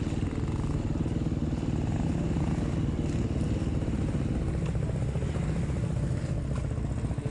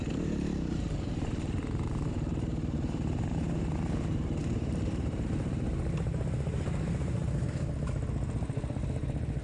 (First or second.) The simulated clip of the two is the second